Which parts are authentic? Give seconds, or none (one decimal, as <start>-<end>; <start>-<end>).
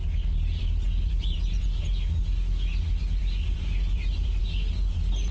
0.0-3.2; 4.4-5.3